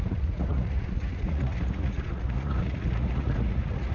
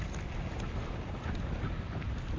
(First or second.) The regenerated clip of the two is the first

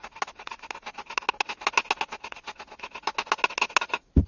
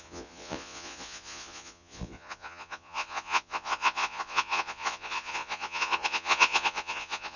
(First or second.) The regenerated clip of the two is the second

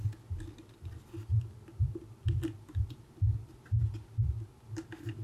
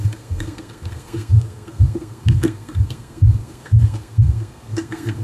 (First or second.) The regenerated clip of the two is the second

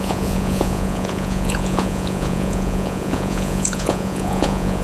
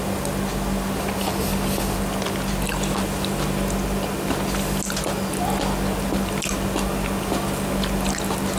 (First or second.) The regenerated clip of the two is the first